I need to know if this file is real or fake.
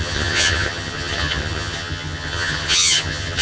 fake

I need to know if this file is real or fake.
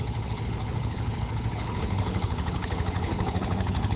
fake